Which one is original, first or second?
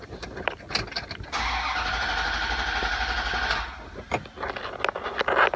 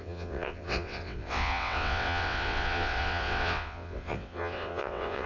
first